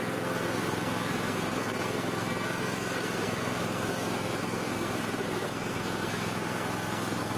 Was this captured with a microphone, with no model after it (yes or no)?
no